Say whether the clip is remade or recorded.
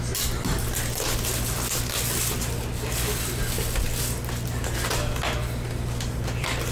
recorded